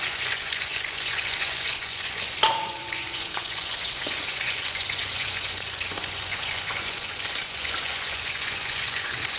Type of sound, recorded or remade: remade